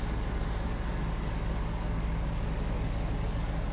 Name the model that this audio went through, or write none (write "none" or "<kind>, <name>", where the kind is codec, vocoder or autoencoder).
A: codec, DAC